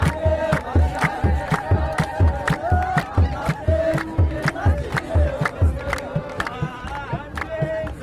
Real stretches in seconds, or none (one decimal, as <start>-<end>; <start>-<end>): 0.0-6.2; 6.7-8.0